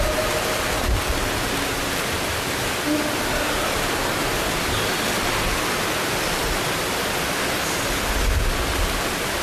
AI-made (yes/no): no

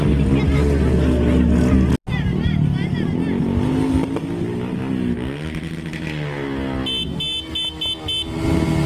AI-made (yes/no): no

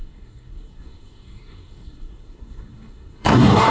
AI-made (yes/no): yes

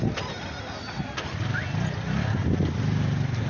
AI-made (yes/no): no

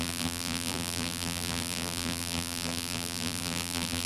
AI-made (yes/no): yes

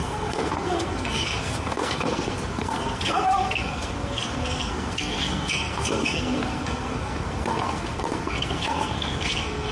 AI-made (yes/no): yes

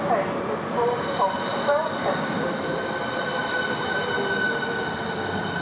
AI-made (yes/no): no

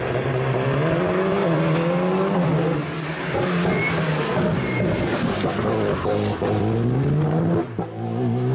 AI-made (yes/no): no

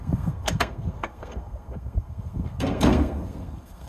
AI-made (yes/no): yes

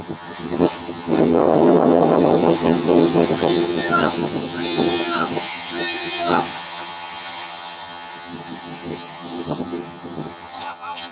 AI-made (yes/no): yes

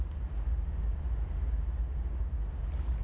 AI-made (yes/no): no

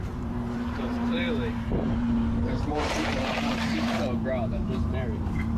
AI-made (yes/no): yes